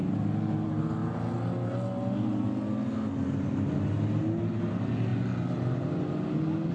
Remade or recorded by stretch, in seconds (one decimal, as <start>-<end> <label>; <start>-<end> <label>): 0.0-6.7 recorded